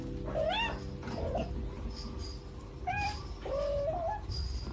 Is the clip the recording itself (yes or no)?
yes